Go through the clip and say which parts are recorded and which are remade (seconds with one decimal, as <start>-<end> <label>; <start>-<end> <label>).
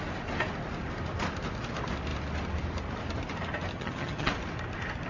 0.0-3.7 recorded; 3.7-4.3 remade; 4.3-5.1 recorded